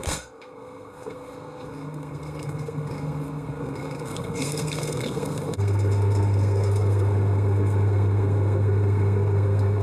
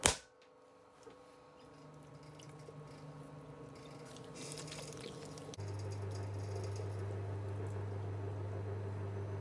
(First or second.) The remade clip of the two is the first